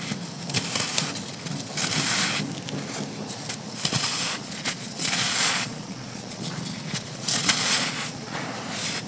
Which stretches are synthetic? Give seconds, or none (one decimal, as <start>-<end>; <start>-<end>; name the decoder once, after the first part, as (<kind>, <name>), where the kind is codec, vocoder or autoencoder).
3.9-8.4 (vocoder, Vocos)